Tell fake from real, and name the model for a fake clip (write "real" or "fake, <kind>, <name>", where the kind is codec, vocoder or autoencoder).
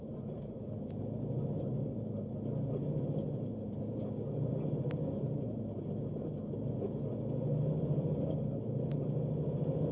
real